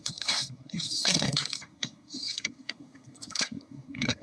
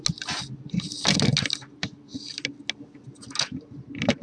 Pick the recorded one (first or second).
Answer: second